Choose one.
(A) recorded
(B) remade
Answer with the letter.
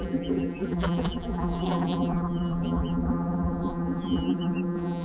B